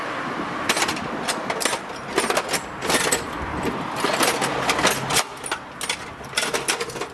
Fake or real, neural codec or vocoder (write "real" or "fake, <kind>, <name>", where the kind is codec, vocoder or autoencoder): real